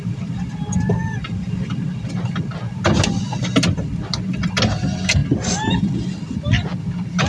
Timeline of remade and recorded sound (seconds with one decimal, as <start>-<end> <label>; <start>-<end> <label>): 0.0-7.3 recorded